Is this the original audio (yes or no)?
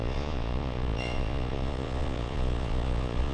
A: no